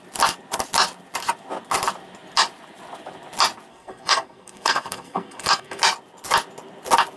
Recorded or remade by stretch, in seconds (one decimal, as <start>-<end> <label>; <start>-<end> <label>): 0.0-3.7 recorded; 3.7-5.8 remade; 5.8-7.2 recorded